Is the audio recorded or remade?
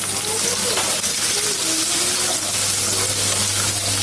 recorded